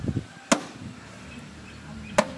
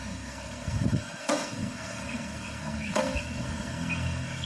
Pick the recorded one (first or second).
first